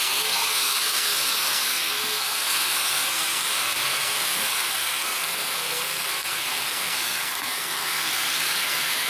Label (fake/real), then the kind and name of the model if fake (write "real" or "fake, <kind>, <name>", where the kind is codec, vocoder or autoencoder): fake, codec, SNAC